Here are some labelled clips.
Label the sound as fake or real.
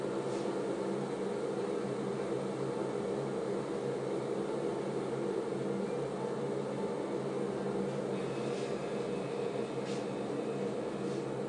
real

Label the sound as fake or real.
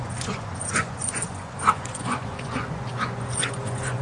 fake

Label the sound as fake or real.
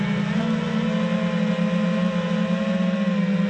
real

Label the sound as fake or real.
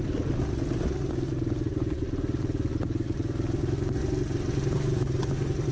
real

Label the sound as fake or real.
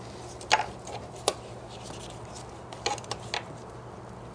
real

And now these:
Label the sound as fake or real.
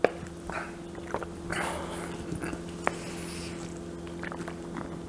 real